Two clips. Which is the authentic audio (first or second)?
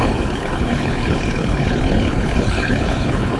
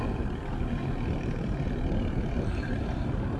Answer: second